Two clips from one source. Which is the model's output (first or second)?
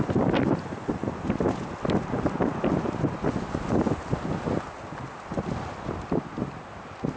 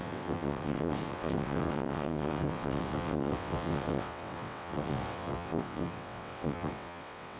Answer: second